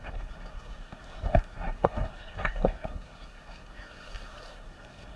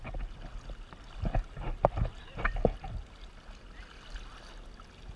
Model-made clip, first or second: first